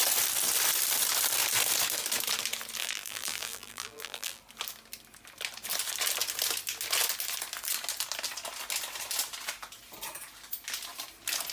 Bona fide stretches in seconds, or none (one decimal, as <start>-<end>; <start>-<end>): 0.0-2.8; 4.4-11.5